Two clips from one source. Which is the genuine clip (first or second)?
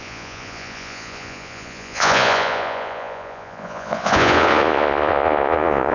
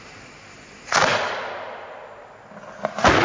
second